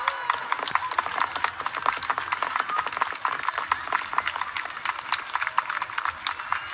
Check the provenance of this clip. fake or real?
real